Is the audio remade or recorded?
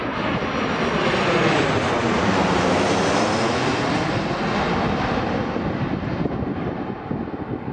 recorded